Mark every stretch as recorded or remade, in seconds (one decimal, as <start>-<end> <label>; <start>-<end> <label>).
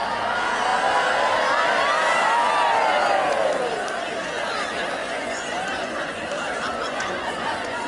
0.0-5.0 recorded; 5.0-6.3 remade; 6.3-6.7 recorded; 6.7-7.9 remade